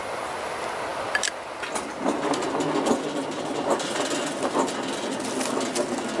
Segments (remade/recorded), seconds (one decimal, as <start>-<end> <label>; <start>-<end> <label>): 0.0-6.2 recorded